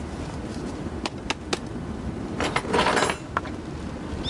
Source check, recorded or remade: recorded